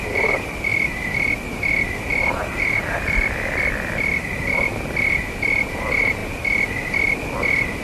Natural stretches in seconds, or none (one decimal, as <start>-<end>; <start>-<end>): 0.0-7.8